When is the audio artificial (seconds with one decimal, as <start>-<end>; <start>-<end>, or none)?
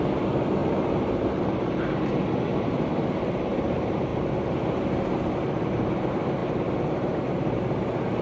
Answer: 0.0-0.6; 1.2-8.2